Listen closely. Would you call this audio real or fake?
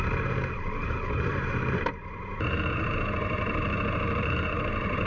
fake